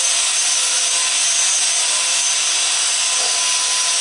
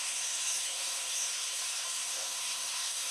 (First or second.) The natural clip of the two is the first